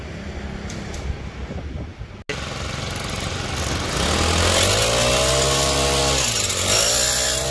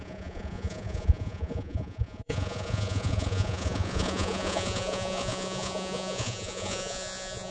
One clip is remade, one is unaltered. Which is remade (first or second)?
second